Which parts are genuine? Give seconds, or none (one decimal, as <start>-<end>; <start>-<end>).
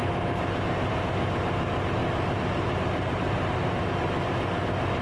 0.0-2.0; 3.8-5.0